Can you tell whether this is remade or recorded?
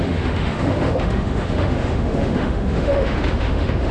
remade